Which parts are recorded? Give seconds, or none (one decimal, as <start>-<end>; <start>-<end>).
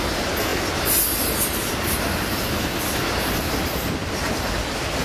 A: 0.0-5.0